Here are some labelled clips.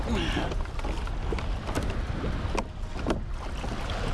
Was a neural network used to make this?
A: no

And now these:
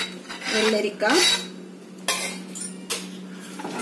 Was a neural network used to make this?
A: no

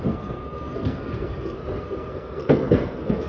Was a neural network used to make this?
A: yes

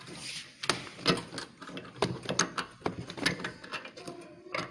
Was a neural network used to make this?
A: no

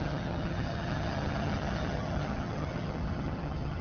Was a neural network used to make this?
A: yes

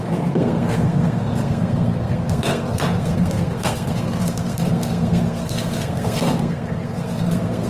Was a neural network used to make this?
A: yes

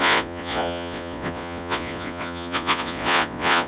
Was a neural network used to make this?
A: yes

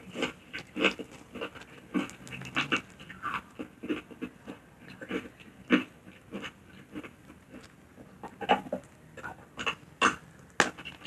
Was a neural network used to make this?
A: no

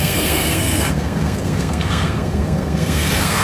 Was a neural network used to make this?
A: yes